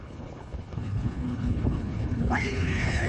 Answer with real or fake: fake